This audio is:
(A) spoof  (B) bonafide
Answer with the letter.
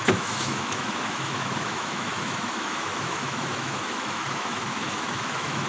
A